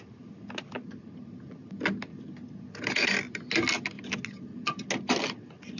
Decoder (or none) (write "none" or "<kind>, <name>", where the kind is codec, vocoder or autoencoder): none